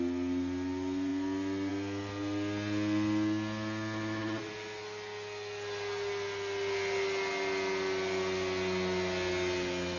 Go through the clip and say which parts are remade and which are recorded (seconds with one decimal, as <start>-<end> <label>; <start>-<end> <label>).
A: 0.0-10.0 recorded